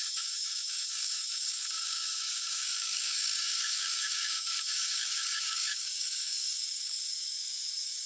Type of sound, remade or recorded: remade